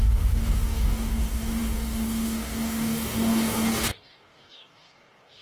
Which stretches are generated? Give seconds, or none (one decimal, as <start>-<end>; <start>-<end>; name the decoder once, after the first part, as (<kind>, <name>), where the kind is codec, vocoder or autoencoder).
0.0-5.4 (codec, DAC)